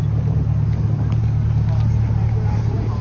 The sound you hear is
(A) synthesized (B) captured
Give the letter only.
B